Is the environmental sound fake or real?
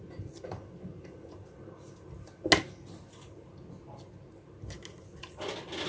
real